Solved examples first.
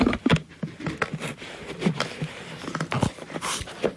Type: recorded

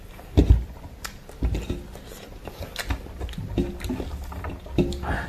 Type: recorded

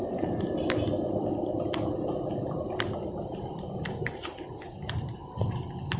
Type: recorded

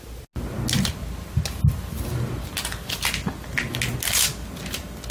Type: recorded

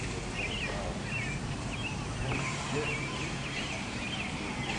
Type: recorded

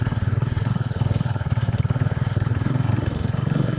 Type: remade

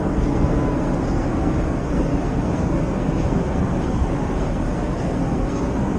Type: remade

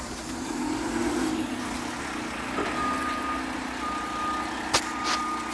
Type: recorded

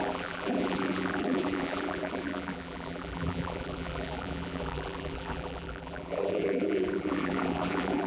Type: remade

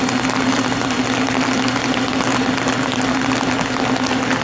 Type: recorded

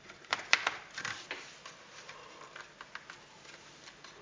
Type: recorded